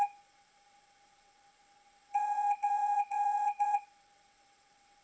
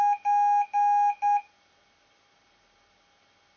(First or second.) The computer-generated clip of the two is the first